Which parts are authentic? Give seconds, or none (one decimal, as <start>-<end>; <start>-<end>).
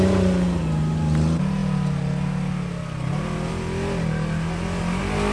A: 0.0-5.3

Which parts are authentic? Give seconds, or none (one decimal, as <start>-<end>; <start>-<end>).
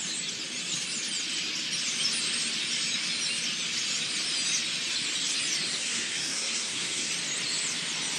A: 0.0-5.8; 7.1-8.2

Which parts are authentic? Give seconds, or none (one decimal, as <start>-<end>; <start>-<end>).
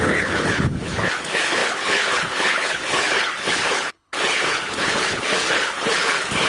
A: none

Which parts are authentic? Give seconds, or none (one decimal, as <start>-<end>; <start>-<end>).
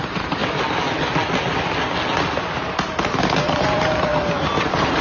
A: 0.4-3.4; 4.1-4.6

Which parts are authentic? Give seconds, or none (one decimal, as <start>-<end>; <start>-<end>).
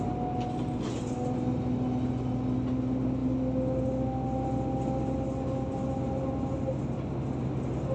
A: 0.0-7.9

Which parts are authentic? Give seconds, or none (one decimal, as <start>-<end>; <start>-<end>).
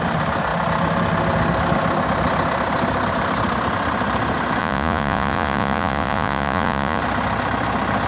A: 0.0-4.6; 7.0-8.1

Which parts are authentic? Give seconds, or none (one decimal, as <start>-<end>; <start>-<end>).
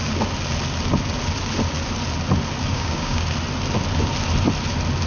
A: 0.0-2.7; 3.2-5.1